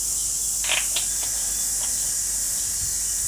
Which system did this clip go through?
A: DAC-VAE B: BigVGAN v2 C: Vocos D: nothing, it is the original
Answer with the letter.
D